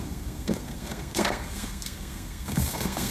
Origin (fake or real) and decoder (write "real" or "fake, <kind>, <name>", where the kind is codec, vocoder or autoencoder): fake, codec, SNAC